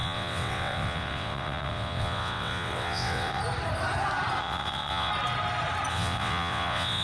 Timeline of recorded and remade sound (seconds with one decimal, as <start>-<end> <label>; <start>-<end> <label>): 0.0-3.4 remade; 3.4-4.4 recorded; 4.4-5.1 remade; 5.1-5.9 recorded; 5.9-7.0 remade